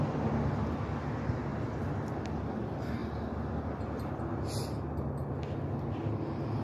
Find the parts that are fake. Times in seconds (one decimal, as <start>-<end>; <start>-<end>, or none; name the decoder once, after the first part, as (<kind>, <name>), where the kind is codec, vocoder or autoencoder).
none